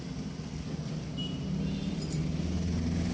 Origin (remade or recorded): recorded